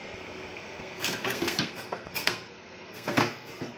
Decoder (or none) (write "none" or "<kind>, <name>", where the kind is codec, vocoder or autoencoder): codec, SNAC